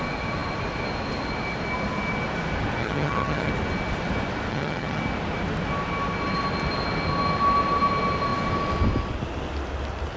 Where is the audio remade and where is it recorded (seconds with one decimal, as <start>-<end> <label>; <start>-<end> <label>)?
0.0-2.8 recorded; 2.8-3.5 remade; 3.5-4.5 recorded; 4.5-5.0 remade; 5.0-10.2 recorded